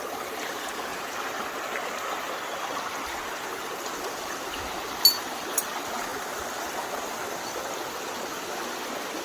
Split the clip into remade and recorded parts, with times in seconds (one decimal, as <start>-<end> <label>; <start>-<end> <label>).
0.0-9.2 recorded